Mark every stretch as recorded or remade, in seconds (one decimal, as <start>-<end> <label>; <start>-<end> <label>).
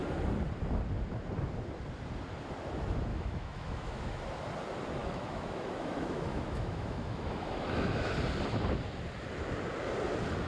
0.0-3.1 recorded; 3.1-4.2 remade; 4.2-5.0 recorded; 5.0-8.1 remade; 8.1-10.5 recorded